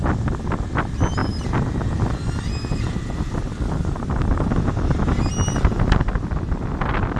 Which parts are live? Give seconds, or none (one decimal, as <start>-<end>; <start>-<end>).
0.0-7.2